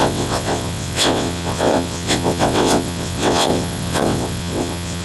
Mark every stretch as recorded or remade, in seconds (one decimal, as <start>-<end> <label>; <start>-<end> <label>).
0.0-5.0 remade